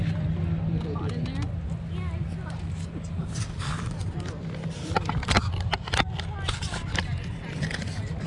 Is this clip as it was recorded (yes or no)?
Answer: yes